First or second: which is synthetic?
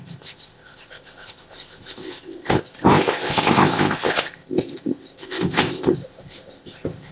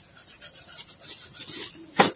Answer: first